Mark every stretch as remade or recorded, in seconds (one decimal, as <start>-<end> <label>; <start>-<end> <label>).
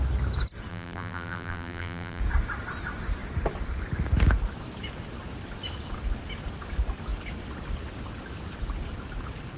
0.0-0.7 recorded; 0.7-2.2 remade; 2.2-9.6 recorded